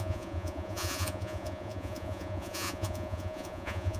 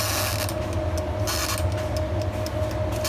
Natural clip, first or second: second